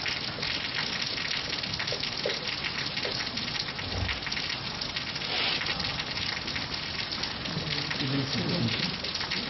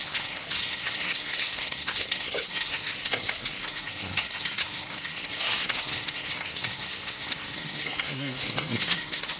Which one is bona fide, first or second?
first